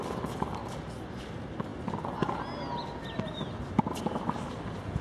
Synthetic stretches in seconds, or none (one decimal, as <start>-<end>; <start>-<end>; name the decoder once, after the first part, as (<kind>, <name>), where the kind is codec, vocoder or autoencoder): none